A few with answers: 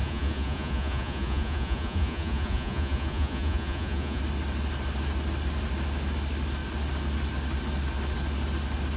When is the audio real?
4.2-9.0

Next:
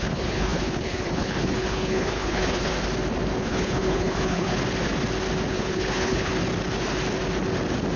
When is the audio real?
2.7-3.4; 4.5-5.5; 6.3-8.0

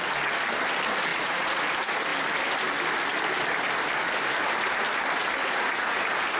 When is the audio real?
0.0-1.1; 1.6-5.4; 6.0-6.4

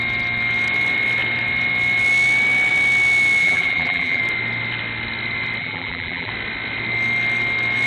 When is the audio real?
0.0-3.4; 4.2-5.6; 6.3-7.9

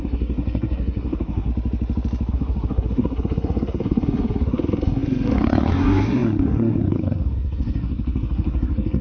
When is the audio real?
1.5-2.3

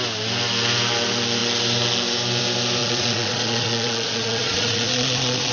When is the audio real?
0.0-2.8

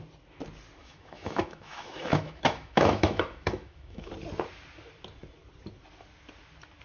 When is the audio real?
0.0-0.8; 4.1-6.8

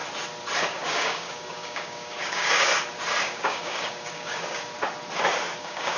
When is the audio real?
0.0-0.6; 2.7-3.2; 4.7-5.6